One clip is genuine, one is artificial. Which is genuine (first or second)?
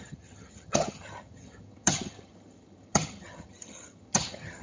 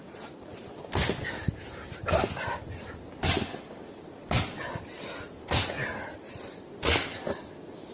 second